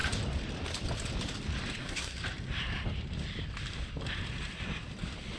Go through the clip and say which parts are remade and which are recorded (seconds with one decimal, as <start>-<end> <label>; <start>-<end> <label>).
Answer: 0.0-1.8 recorded; 1.8-2.2 remade; 2.2-5.4 recorded